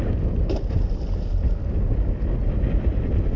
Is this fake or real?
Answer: real